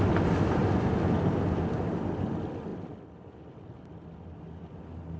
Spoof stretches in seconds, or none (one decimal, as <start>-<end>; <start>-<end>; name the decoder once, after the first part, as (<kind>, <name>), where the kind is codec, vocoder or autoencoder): none